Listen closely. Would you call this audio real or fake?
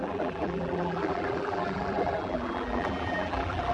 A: fake